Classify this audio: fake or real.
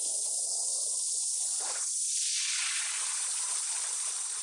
real